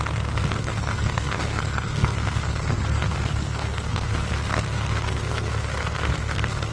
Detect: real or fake fake